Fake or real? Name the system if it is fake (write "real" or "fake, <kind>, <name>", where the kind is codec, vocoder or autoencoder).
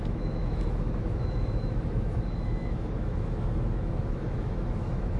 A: fake, autoencoder, DAC-VAE